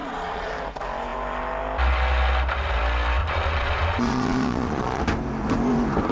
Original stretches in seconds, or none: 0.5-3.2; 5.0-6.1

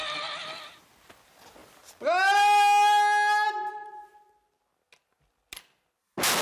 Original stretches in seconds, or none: 0.0-6.4

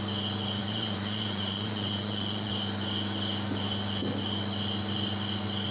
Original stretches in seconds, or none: 0.0-0.6; 2.5-5.7

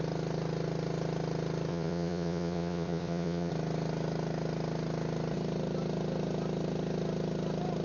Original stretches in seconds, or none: 0.0-1.7; 3.5-7.8

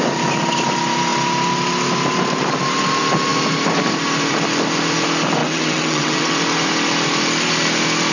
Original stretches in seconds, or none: 0.0-5.4; 6.3-8.1

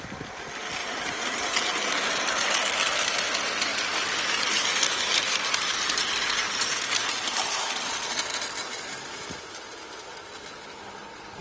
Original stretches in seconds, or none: 0.0-0.8; 1.4-3.7; 7.7-11.4